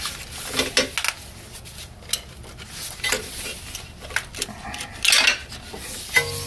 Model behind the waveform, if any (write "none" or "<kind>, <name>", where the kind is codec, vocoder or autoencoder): none